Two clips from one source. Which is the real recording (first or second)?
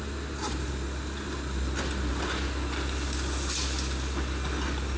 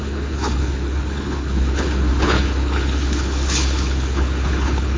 first